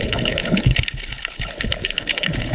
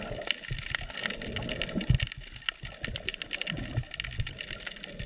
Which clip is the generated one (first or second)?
first